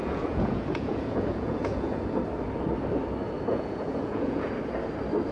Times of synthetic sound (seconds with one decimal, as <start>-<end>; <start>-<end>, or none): 0.0-2.2; 3.5-4.5